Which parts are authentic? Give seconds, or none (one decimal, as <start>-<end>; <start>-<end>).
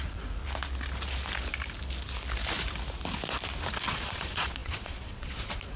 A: 0.4-3.9